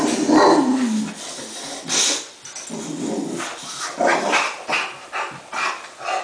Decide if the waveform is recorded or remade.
recorded